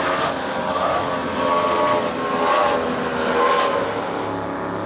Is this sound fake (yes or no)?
no